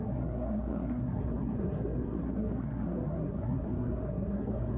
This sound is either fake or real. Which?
fake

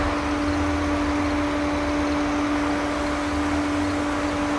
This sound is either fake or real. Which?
real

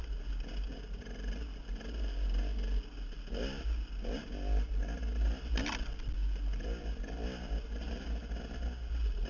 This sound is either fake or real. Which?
real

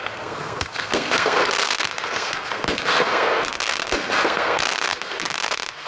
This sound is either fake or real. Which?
fake